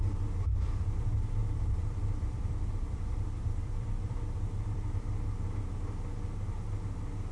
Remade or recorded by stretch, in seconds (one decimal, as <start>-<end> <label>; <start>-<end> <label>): 0.0-1.4 recorded; 1.4-5.7 remade; 5.7-7.3 recorded